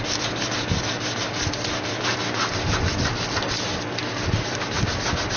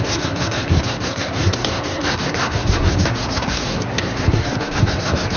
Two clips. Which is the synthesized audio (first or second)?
second